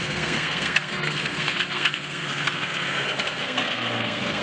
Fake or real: fake